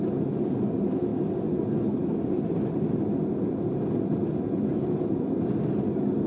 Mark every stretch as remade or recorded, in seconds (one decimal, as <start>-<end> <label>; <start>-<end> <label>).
0.0-6.3 recorded